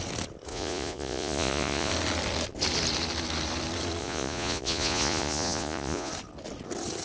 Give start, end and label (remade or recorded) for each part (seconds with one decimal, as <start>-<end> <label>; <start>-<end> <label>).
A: 0.0-0.5 recorded; 0.5-1.9 remade; 1.9-4.0 recorded; 4.0-6.1 remade; 6.1-7.0 recorded